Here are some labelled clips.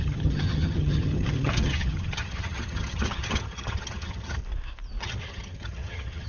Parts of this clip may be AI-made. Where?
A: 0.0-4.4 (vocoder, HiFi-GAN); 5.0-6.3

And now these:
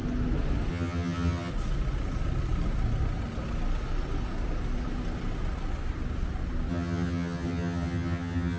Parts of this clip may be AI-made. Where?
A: 0.7-1.5 (vocoder, HiFi-GAN); 6.7-8.6

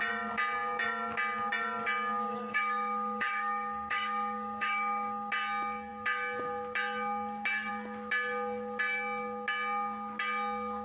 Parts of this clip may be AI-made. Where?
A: 2.2-5.3 (autoencoder, DAC-VAE)

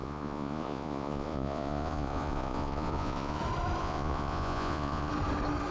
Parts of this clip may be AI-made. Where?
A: 0.0-3.4 (vocoder, Vocos); 3.8-5.1

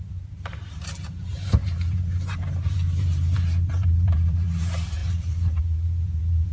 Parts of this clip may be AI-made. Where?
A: 0.0-6.5 (vocoder, BigVGAN v2)

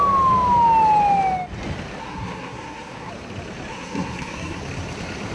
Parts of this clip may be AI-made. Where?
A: 2.0-3.1 (codec, SNAC); 3.7-4.6

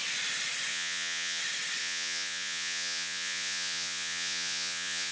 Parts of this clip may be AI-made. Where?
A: 0.7-1.4 (vocoder, Vocos); 1.8-5.1

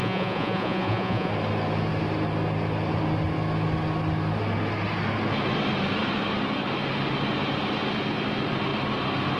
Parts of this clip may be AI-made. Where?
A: 0.0-1.3 (vocoder, Vocos)